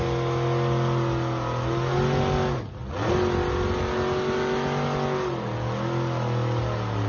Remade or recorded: recorded